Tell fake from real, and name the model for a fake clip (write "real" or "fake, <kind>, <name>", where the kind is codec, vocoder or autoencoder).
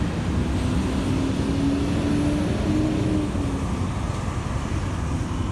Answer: real